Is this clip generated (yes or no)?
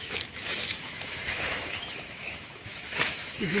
yes